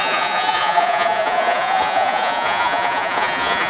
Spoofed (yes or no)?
yes